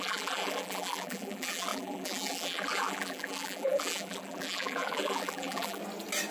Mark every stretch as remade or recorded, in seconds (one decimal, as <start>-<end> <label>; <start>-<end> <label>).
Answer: 0.0-5.8 remade; 5.8-6.3 recorded